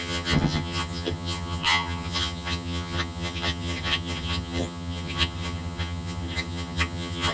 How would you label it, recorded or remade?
remade